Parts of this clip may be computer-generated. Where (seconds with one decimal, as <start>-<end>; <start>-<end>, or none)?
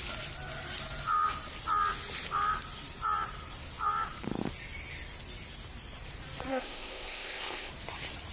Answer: 6.5-7.7